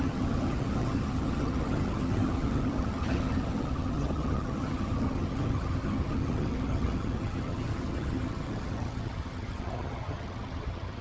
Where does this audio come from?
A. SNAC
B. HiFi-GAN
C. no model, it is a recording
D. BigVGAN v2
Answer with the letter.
B